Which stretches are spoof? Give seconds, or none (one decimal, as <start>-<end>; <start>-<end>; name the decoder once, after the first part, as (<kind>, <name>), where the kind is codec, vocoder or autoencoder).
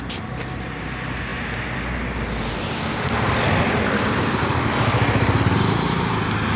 0.0-6.6 (vocoder, BigVGAN v2)